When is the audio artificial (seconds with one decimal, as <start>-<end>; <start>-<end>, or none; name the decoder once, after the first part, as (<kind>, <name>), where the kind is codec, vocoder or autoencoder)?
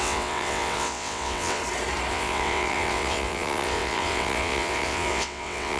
0.0-1.6 (vocoder, WaveNeXt); 2.1-5.8